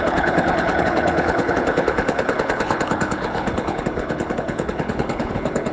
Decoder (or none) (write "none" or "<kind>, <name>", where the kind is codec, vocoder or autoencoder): codec, HILCodec